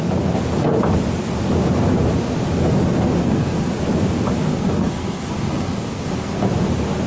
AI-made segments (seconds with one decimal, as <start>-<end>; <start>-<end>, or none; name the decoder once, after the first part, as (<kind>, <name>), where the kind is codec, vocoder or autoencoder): 3.2-3.7 (codec, SNAC); 4.5-6.5